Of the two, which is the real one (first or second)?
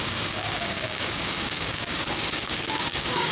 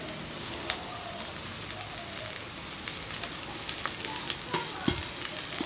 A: second